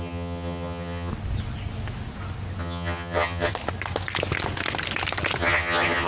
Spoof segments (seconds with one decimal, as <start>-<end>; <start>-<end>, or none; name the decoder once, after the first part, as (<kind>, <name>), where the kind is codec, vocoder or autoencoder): 0.0-1.1 (vocoder, HiFi-GAN); 2.6-3.5; 5.4-6.1